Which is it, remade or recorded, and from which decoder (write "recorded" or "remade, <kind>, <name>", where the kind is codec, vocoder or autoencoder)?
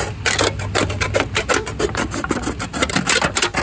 recorded